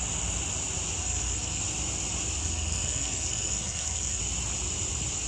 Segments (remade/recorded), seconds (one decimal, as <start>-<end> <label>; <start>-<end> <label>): 0.0-1.0 recorded; 1.0-1.6 remade; 1.6-2.4 recorded; 2.4-4.2 remade; 4.2-5.3 recorded